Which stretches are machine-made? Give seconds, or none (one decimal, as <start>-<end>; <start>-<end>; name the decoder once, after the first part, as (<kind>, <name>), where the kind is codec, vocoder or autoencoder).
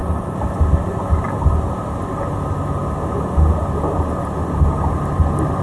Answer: none